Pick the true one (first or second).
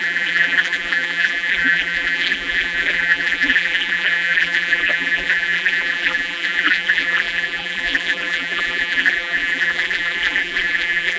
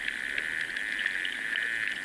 second